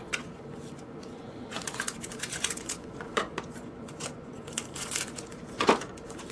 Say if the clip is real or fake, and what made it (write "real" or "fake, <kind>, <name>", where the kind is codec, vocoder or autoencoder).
fake, vocoder, Vocos